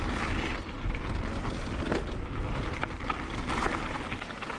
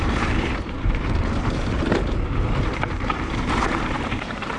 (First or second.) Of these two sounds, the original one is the first